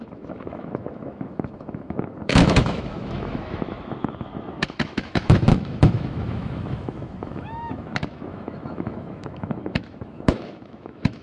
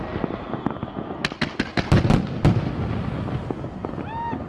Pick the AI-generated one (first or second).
first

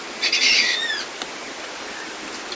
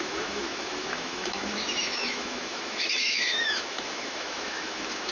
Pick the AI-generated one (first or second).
second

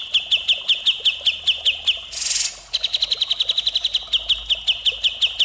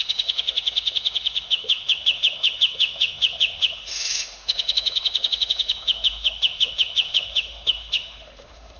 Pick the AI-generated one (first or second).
second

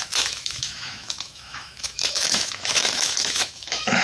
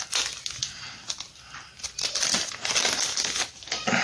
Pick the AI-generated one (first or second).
first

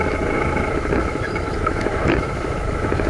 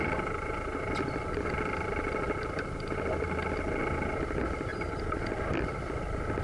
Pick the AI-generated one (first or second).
first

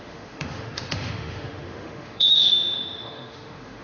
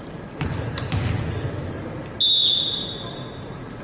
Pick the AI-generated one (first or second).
first